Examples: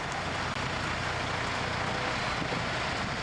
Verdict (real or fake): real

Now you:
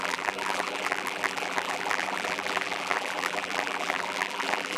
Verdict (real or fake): fake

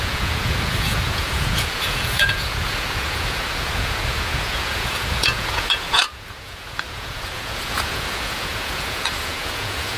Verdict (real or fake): fake